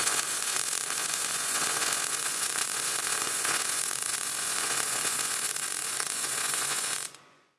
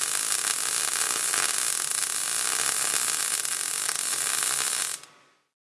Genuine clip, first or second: second